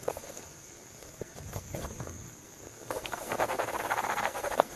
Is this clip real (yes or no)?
no